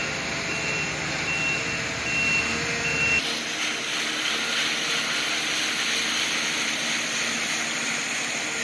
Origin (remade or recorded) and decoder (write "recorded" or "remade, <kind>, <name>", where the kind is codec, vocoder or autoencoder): recorded